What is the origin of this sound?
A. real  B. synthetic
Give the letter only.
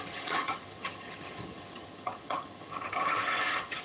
B